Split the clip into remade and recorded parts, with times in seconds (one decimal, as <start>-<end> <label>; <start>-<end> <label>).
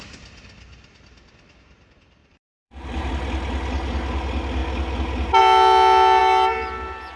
0.0-2.2 recorded; 2.2-3.1 remade; 3.1-7.2 recorded